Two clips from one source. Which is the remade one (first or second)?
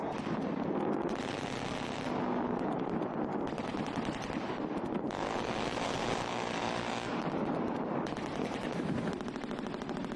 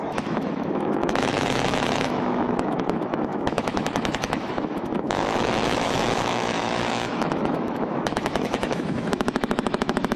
second